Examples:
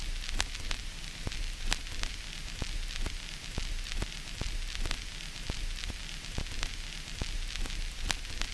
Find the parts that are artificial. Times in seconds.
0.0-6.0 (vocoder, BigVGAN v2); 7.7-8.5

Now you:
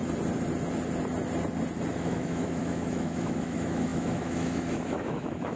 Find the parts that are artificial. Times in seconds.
2.0-5.6 (autoencoder, DAC-VAE)